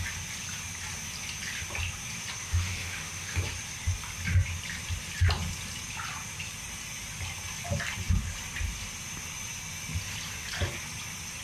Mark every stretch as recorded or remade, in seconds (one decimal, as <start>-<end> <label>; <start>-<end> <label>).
0.0-2.4 recorded; 2.4-3.4 remade; 3.4-11.4 recorded